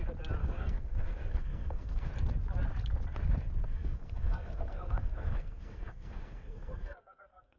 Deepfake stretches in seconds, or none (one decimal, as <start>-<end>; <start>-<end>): 0.4-2.1; 3.7-7.6

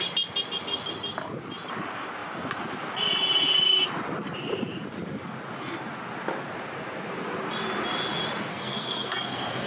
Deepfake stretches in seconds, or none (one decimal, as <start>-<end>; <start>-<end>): 8.5-9.7

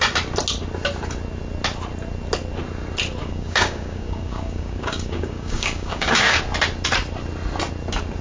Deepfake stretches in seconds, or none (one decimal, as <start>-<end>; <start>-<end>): 3.2-6.4

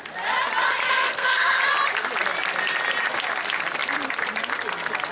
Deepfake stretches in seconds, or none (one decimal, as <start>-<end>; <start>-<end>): 0.9-1.6

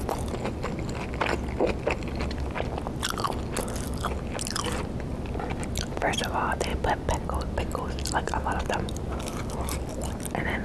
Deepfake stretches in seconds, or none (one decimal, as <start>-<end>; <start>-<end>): none

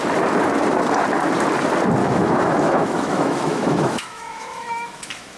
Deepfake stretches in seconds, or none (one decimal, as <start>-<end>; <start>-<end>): 2.0-5.4

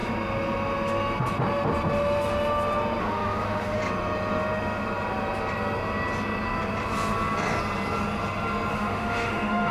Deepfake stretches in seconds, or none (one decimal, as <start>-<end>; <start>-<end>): 3.0-3.8; 8.7-9.7

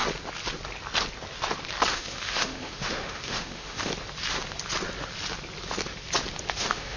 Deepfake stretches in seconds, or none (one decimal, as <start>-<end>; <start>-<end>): 1.9-3.9; 6.5-7.0